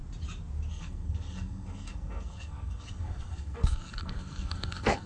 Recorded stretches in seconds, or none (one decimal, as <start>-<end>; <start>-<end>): 0.0-0.7